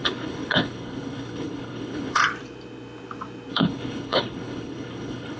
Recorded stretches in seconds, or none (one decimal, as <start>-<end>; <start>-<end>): 2.2-3.5